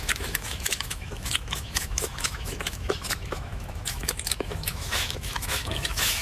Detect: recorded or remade remade